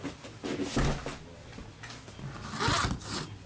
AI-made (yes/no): no